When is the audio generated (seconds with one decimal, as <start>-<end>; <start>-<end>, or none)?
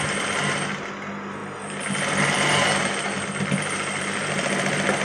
none